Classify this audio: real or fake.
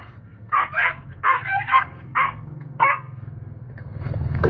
fake